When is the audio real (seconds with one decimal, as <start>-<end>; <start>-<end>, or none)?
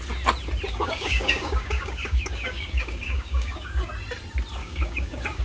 0.0-0.7; 3.9-4.6